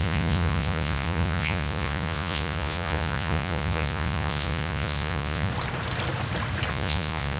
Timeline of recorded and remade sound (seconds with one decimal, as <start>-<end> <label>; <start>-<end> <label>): 0.0-5.5 remade; 5.5-6.7 recorded; 6.7-7.4 remade

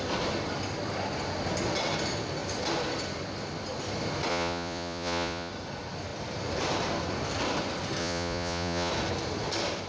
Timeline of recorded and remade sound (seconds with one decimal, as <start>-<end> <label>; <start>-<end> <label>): 0.0-4.3 recorded; 4.3-5.5 remade; 5.5-8.0 recorded; 8.0-8.9 remade; 8.9-9.9 recorded

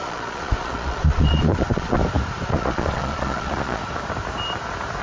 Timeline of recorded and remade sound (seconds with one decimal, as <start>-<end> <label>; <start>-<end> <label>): 0.0-2.0 remade; 2.0-2.5 recorded; 2.5-3.8 remade; 3.8-5.0 recorded

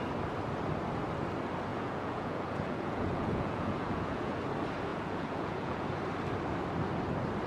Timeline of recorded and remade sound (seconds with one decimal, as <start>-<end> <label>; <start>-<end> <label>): 0.0-1.7 recorded; 1.7-4.4 remade; 4.4-4.9 recorded; 4.9-6.0 remade; 6.0-7.5 recorded

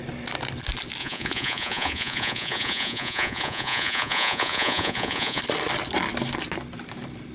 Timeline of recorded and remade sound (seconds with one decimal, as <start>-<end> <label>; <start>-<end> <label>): 0.0-1.0 recorded; 1.0-5.4 remade; 5.4-7.3 recorded

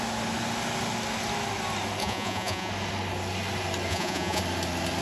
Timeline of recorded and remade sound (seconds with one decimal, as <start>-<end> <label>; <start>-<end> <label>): 0.0-2.0 recorded; 2.0-2.7 remade; 2.7-3.9 recorded; 3.9-4.4 remade; 4.4-5.0 recorded

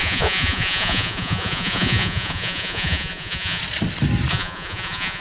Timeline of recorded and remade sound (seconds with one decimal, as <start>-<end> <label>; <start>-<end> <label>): 0.0-3.6 remade; 3.6-4.3 recorded; 4.3-5.2 remade